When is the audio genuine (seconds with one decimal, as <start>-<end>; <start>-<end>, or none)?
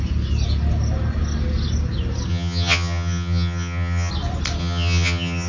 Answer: 0.0-2.3; 4.1-4.6